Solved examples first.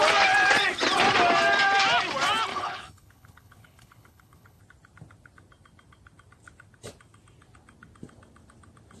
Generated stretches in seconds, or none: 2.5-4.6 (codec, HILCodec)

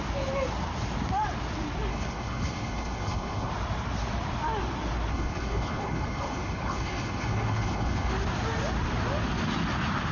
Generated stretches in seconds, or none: 1.9-3.5 (codec, HILCodec); 5.1-8.1

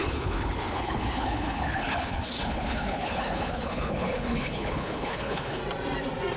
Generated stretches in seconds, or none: 0.0-5.6 (codec, HILCodec)

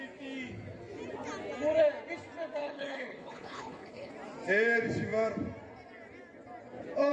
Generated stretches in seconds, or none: 2.6-4.1 (codec, HILCodec)